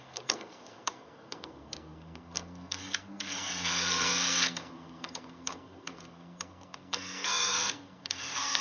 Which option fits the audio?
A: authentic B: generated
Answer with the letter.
B